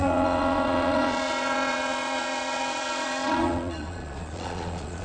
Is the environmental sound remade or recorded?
remade